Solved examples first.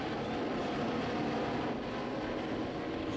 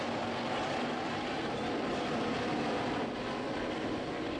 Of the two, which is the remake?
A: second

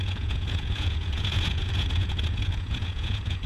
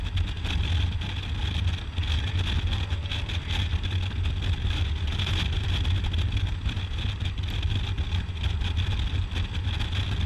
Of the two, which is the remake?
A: first